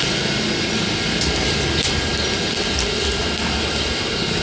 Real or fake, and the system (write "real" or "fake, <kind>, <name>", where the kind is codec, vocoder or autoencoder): real